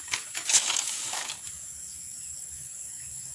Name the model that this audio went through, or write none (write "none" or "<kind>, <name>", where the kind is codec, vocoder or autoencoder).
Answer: codec, DAC